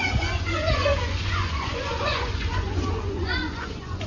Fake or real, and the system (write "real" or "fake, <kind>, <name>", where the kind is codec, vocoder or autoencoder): fake, vocoder, Vocos